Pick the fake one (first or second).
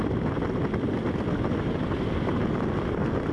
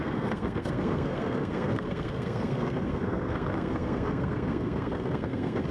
second